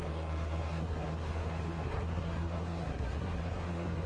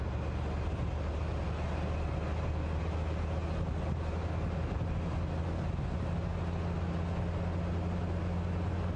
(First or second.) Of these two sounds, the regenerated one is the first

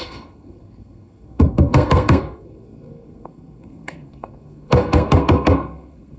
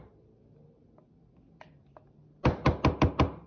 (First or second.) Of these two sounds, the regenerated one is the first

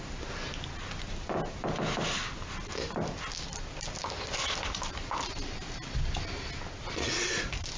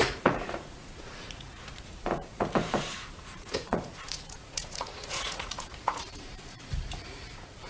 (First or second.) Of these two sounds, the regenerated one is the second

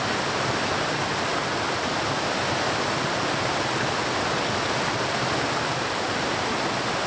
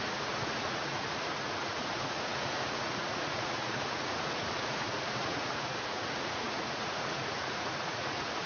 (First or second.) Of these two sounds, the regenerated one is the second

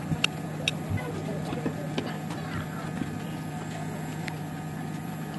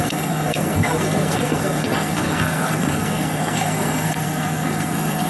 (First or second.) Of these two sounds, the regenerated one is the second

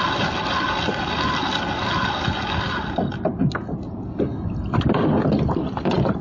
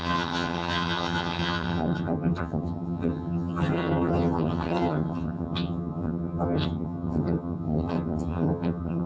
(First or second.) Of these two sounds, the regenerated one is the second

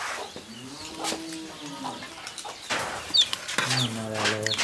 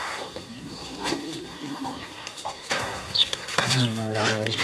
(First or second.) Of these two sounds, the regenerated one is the second